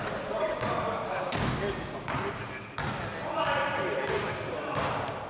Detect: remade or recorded recorded